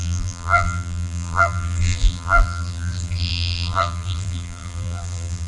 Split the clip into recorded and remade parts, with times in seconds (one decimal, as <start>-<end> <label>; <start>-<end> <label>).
0.0-5.5 remade